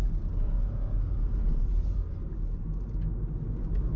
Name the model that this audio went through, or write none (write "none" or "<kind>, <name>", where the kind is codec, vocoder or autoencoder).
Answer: none